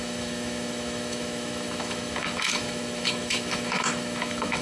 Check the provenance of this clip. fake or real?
fake